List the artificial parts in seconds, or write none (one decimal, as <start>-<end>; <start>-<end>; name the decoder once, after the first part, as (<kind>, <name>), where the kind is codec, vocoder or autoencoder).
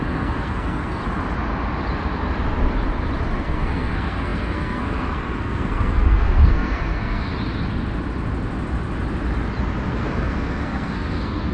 0.0-1.0 (codec, SNAC); 3.4-7.3; 9.9-11.5